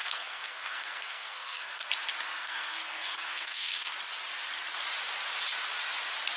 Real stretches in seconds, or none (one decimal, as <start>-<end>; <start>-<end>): 1.9-2.4; 3.9-6.4